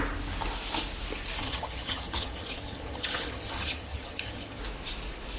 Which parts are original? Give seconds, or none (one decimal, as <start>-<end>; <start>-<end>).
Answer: 0.0-1.4; 4.6-5.4